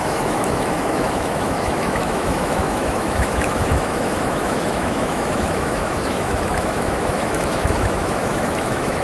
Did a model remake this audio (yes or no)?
yes